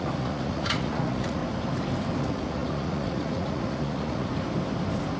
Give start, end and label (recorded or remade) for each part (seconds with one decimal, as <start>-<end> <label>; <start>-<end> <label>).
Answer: 0.0-1.4 remade; 1.4-2.2 recorded; 2.2-4.3 remade; 4.3-5.2 recorded